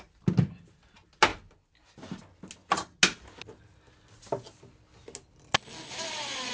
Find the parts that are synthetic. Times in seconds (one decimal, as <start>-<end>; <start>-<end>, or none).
none